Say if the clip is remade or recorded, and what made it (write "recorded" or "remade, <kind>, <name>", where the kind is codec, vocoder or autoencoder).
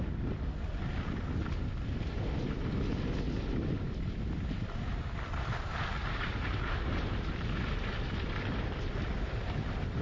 recorded